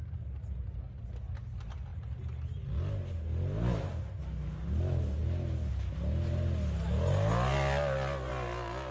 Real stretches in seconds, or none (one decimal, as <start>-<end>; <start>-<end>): 0.0-8.9